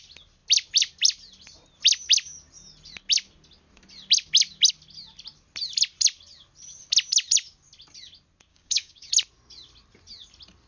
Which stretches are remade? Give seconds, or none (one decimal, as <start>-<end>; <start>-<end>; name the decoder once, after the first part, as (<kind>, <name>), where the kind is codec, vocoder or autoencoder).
8.5-9.1 (codec, DAC)